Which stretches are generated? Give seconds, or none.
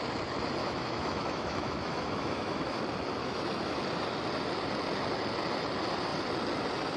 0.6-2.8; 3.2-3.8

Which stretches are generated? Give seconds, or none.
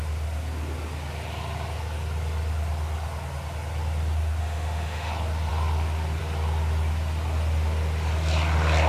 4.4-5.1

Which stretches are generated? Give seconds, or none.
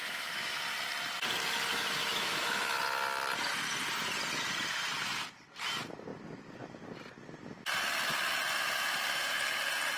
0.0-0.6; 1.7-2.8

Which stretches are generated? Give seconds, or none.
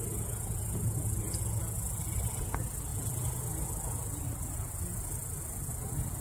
none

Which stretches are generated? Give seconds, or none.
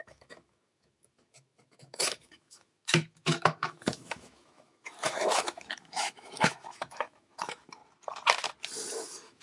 0.0-7.8; 8.9-9.4